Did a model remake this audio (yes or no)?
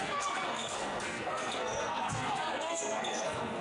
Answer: yes